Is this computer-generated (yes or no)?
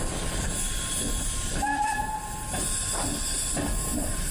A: yes